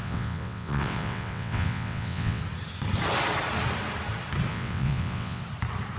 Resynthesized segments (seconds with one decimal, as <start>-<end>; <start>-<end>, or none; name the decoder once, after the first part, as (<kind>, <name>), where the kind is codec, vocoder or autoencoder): 0.0-2.4 (vocoder, WaveNeXt); 4.5-5.4